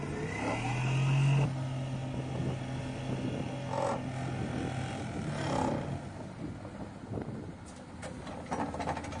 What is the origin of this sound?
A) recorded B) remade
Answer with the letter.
A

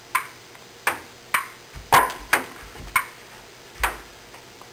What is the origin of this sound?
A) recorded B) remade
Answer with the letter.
A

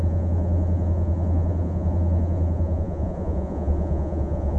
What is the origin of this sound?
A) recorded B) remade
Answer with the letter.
B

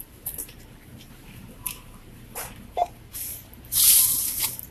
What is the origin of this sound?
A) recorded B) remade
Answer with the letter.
B